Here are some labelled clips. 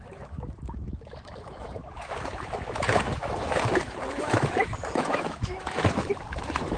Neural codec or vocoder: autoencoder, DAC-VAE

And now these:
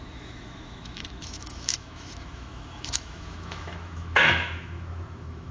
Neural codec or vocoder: autoencoder, DAC-VAE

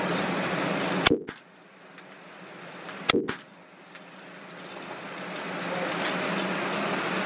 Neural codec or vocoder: none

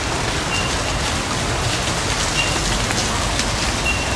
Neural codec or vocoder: none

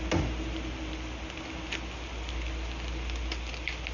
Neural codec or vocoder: none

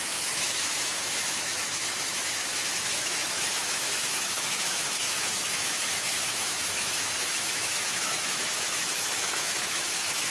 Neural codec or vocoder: autoencoder, DAC-VAE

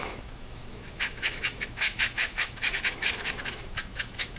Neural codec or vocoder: autoencoder, DAC-VAE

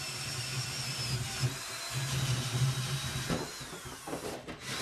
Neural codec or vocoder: none